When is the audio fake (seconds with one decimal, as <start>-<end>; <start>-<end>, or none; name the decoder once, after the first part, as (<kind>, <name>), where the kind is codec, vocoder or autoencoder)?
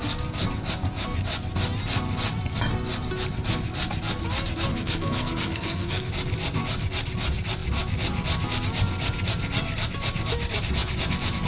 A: 4.7-6.1 (codec, SNAC)